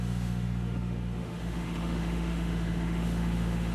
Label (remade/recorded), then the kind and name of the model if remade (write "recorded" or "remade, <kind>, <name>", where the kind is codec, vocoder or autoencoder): remade, autoencoder, DAC-VAE